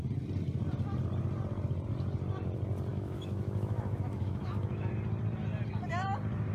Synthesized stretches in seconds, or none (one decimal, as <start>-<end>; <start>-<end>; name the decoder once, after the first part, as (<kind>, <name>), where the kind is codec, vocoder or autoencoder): 2.9-4.9 (autoencoder, DAC-VAE)